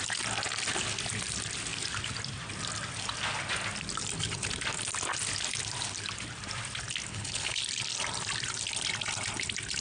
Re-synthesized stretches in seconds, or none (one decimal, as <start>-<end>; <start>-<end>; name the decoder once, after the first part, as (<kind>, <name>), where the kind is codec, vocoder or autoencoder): 7.1-7.6 (codec, HILCodec)